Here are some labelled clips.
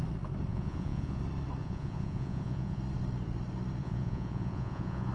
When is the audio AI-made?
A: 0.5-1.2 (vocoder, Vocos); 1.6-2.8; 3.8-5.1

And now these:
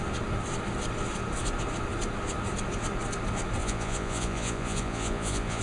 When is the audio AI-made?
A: 3.6-5.6 (vocoder, Vocos)

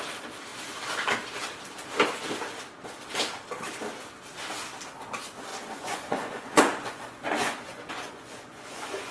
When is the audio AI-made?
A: 5.5-9.1 (vocoder, Vocos)

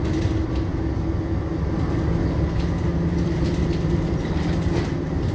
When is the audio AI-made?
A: none

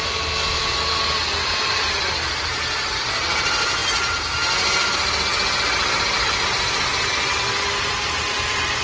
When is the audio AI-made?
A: none

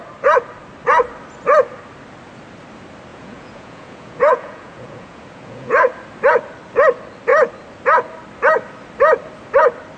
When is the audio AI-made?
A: 3.1-5.9 (vocoder, Vocos)

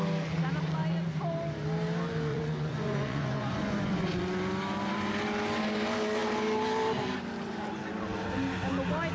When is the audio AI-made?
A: 2.3-4.2 (vocoder, Vocos)